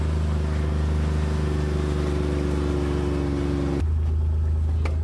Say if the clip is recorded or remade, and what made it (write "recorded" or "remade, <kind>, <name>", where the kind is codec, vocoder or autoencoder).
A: recorded